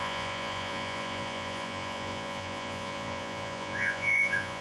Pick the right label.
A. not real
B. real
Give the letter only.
A